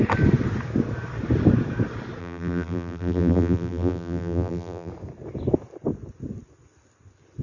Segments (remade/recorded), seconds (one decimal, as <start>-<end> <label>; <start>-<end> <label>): 0.0-2.2 recorded; 2.2-4.9 remade; 4.9-7.4 recorded

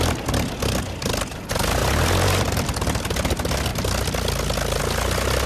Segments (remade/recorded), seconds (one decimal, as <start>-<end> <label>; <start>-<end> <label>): 0.0-5.5 recorded

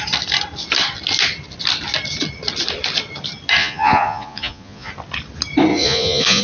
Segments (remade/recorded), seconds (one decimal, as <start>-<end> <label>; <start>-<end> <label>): 0.0-3.6 recorded; 3.6-4.9 remade; 4.9-5.7 recorded; 5.7-6.4 remade

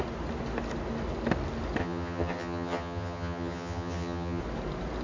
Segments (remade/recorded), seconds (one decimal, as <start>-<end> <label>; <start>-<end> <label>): 0.0-1.8 recorded; 1.8-4.4 remade; 4.4-5.0 recorded

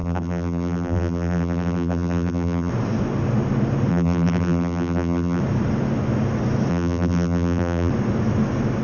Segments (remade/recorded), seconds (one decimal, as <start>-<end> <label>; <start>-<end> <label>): 0.0-2.7 remade; 2.7-3.9 recorded; 3.9-5.4 remade; 5.4-6.7 recorded; 6.7-7.9 remade; 7.9-8.8 recorded

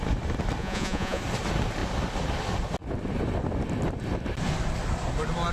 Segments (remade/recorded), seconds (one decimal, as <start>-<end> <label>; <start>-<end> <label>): 0.0-0.6 recorded; 0.6-1.2 remade; 1.2-5.5 recorded